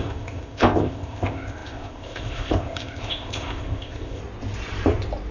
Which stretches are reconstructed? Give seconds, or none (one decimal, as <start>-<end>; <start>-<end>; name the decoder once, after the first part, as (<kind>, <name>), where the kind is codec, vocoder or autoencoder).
0.0-4.2 (codec, ZipCodec)